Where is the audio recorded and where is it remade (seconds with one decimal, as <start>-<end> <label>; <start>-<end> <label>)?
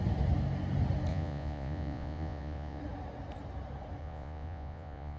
0.0-1.1 recorded; 1.1-2.8 remade; 2.8-4.0 recorded; 4.0-5.2 remade